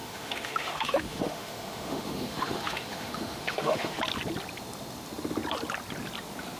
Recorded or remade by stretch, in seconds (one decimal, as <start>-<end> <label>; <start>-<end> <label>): 0.0-4.0 remade; 4.0-6.6 recorded